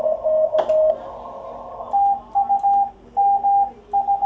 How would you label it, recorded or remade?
recorded